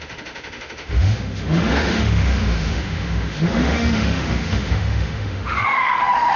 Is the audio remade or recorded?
remade